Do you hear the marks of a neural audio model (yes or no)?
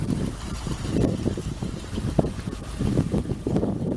yes